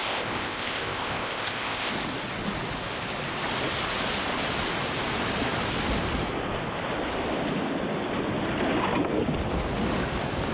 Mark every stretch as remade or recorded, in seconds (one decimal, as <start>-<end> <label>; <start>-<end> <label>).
0.0-1.9 remade; 1.9-10.5 recorded